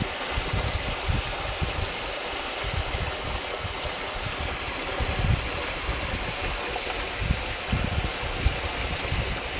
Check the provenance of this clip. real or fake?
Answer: real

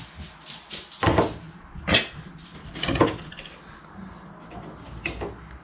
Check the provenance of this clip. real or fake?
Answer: real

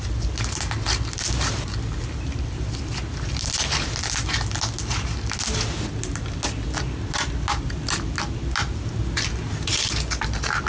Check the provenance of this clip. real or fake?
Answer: real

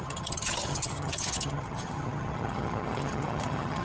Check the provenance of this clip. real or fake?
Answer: fake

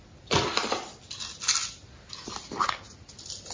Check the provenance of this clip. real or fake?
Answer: real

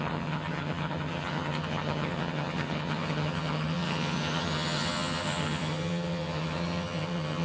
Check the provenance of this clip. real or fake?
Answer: fake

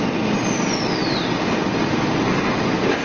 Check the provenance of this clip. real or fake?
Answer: real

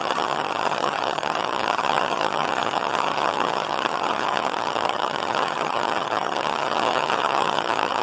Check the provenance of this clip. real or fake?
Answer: fake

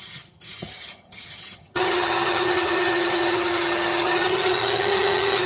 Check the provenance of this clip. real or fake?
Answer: fake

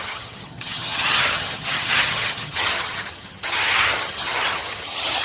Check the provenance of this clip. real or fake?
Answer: fake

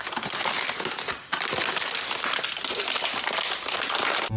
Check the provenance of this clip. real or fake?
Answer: real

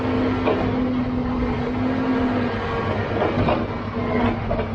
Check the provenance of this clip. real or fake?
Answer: real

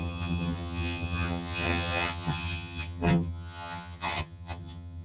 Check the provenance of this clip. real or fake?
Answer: fake